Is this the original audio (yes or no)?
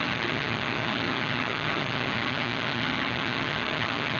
no